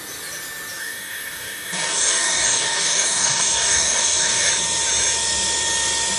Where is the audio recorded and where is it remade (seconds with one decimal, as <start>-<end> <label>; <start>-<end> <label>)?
0.0-0.8 recorded; 0.8-4.5 remade; 4.5-6.2 recorded